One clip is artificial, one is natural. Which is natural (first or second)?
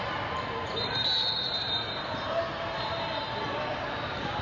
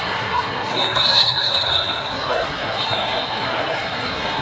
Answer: first